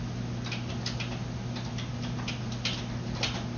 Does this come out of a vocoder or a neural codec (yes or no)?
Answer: no